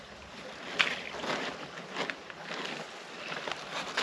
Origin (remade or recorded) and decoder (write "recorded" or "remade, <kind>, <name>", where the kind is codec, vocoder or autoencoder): recorded